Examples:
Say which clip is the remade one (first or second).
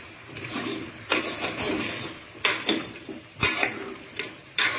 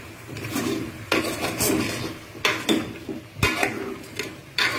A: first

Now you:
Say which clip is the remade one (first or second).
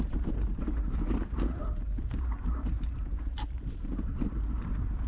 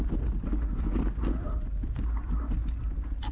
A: first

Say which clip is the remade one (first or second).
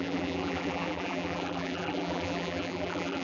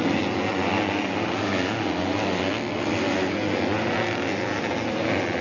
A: first